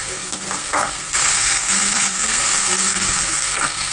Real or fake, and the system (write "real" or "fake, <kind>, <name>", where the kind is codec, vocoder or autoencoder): fake, codec, SNAC